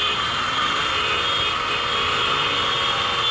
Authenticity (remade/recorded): recorded